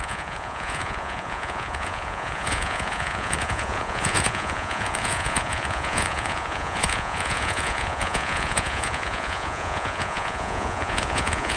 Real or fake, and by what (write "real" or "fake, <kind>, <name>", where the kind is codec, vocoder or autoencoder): fake, vocoder, Vocos